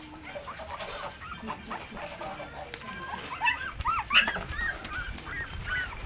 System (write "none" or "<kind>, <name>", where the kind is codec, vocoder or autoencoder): none